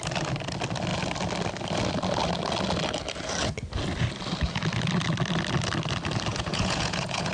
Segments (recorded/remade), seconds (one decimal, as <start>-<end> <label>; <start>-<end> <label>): 0.0-6.3 recorded; 6.3-7.3 remade